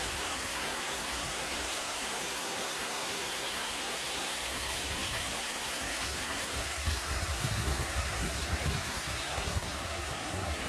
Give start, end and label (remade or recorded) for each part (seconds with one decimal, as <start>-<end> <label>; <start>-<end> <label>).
0.0-10.7 remade